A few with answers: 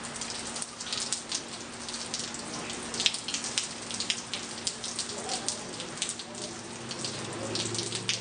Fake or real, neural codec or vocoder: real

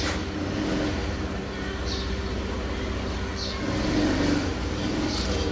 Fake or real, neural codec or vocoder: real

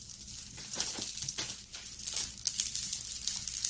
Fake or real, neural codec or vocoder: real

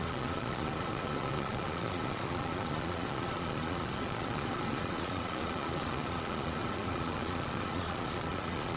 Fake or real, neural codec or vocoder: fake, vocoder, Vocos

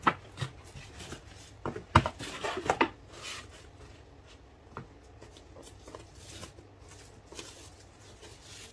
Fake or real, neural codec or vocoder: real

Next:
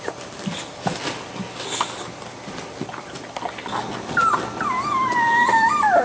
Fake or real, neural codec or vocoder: real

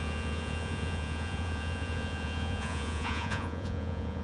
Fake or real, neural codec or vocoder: fake, vocoder, Vocos